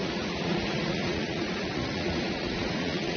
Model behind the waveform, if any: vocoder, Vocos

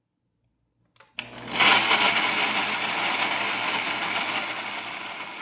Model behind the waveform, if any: none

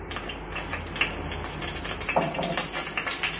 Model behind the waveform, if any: none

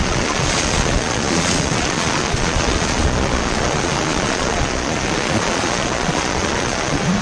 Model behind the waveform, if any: vocoder, Vocos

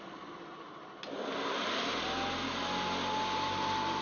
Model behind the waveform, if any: none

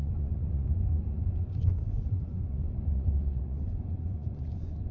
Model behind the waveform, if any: vocoder, Vocos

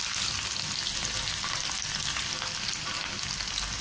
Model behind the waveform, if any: none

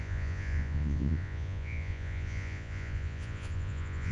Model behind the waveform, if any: vocoder, Vocos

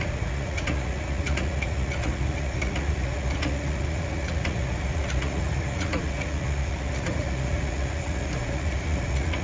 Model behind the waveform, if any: vocoder, Vocos